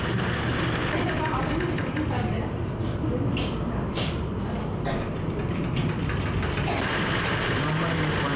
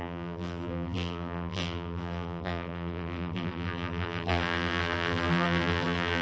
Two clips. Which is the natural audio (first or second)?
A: first